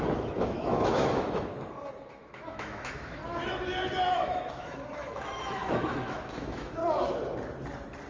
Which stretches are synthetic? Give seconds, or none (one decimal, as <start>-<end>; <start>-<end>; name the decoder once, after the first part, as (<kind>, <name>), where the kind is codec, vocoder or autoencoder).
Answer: 0.0-1.5 (autoencoder, DAC-VAE); 2.1-3.2; 4.1-6.8